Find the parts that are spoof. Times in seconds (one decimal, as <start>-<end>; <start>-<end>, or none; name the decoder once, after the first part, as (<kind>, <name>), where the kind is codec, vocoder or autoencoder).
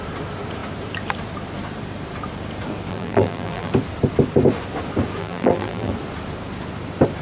2.9-3.7 (vocoder, BigVGAN v2); 5.2-5.9